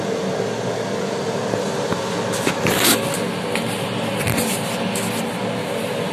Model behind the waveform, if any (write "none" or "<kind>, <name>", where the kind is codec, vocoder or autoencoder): none